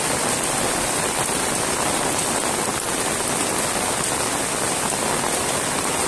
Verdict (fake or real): real